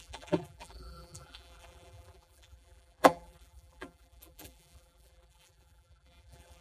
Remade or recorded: remade